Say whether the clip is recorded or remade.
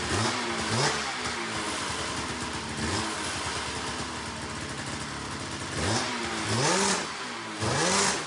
recorded